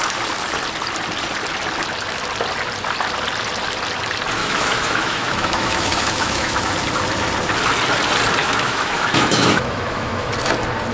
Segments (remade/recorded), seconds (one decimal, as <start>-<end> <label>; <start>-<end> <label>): 0.0-4.4 recorded; 4.4-6.7 remade; 6.7-8.4 recorded; 8.4-10.3 remade; 10.3-10.9 recorded